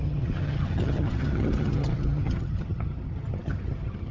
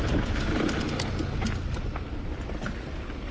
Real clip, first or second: second